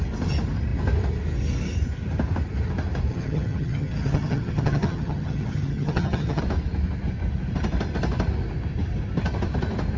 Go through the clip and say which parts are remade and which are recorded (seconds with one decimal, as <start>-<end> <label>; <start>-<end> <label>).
0.0-3.1 recorded; 3.1-6.4 remade; 6.4-10.0 recorded